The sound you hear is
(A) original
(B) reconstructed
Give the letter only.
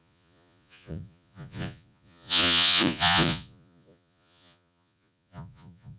B